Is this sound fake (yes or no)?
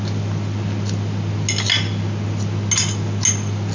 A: no